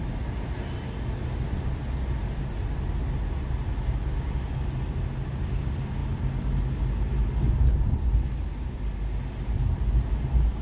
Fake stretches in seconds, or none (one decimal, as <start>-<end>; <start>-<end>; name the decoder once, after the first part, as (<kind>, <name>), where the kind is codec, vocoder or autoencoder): none